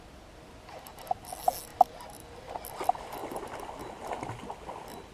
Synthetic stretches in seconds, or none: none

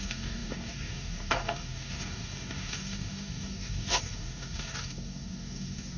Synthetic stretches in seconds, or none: 0.0-6.0 (codec, DAC)